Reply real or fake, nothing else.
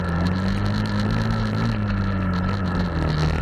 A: real